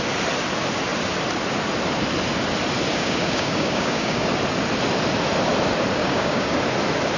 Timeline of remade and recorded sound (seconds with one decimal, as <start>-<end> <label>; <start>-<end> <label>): 0.0-2.9 recorded; 2.9-4.3 remade; 4.3-6.0 recorded; 6.0-6.6 remade; 6.6-7.2 recorded